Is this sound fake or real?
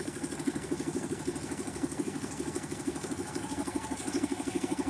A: fake